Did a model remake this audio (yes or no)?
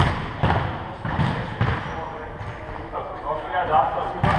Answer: no